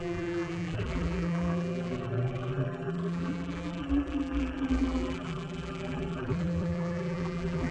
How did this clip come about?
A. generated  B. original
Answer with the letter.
A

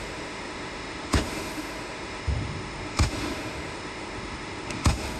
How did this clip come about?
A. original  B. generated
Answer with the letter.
B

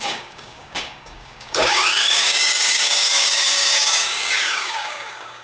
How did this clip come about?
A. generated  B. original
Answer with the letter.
A